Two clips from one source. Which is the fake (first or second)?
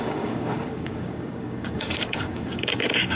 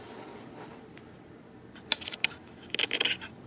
first